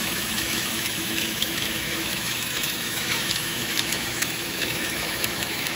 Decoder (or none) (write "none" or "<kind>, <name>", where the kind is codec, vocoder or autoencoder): autoencoder, DAC-VAE